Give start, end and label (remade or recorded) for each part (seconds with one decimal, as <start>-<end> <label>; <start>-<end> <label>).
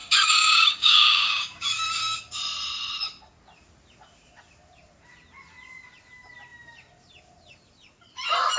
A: 0.0-2.2 remade; 2.2-8.6 recorded